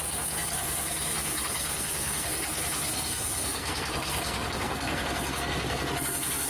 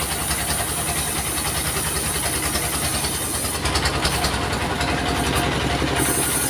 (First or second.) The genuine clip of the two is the second